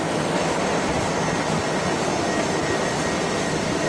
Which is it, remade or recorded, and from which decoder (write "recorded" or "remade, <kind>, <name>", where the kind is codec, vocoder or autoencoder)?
recorded